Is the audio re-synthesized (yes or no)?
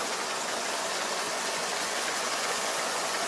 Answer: yes